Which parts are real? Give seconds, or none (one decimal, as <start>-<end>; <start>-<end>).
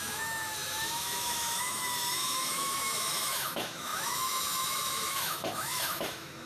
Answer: none